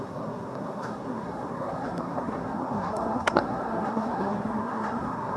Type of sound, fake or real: fake